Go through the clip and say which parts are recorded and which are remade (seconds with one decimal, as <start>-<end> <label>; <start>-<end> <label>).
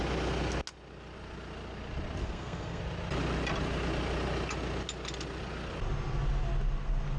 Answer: 0.0-2.2 recorded; 2.2-2.8 remade; 2.8-7.2 recorded